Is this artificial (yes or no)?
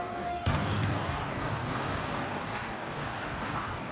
yes